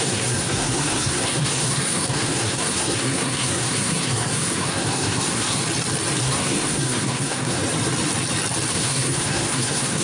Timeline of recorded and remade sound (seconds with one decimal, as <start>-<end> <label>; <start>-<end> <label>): 0.0-5.6 remade; 5.6-6.2 recorded; 6.2-7.6 remade; 7.6-8.7 recorded; 8.7-10.0 remade